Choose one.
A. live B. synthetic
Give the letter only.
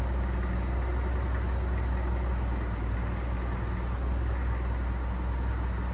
A